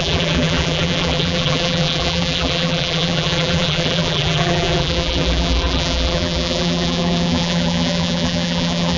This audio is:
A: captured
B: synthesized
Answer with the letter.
B